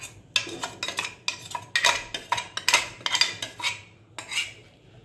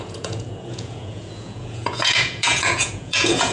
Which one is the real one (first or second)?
first